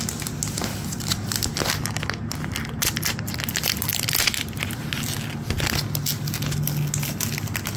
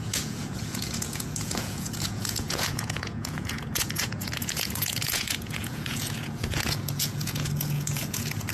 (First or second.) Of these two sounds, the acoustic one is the first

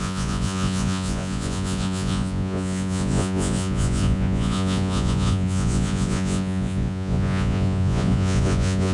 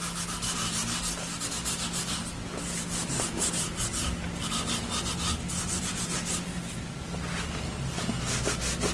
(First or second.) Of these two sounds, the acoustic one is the second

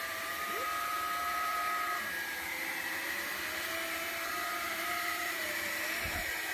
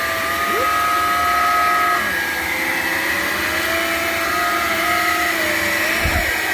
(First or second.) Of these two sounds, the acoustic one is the second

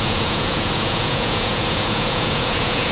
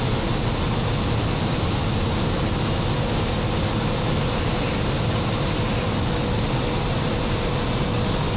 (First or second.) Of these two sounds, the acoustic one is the second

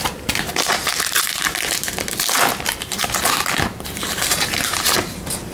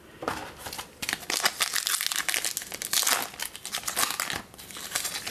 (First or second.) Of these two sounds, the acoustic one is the second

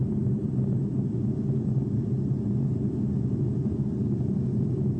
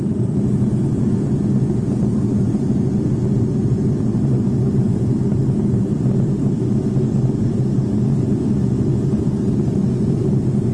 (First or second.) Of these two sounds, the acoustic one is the first